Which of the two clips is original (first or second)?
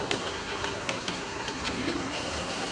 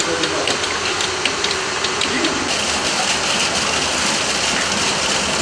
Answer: second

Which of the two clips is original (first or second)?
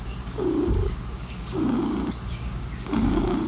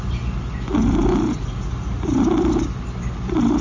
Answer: second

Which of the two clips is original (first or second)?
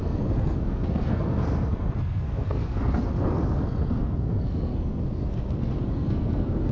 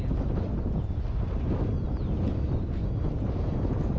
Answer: second